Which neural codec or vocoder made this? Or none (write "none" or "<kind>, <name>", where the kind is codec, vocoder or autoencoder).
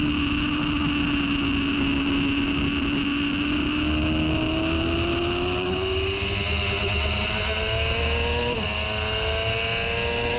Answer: none